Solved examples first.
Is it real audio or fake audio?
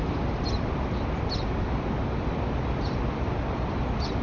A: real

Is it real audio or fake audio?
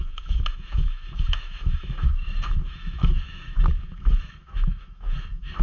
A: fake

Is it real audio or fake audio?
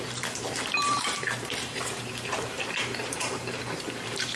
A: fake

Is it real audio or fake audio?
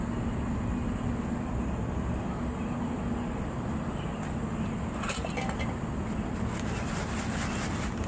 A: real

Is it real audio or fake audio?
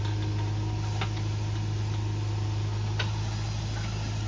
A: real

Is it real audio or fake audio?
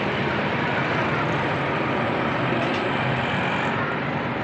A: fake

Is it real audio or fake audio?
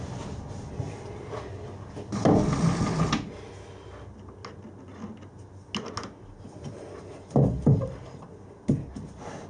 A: real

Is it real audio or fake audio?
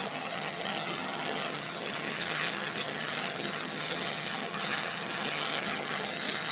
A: fake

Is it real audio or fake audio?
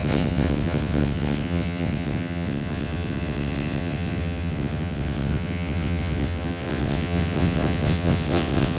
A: fake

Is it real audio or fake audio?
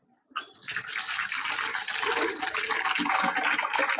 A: real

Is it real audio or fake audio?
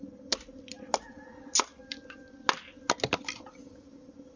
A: real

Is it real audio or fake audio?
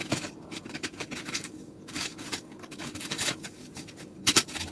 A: fake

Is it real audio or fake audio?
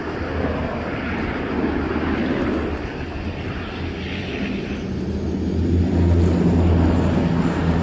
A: real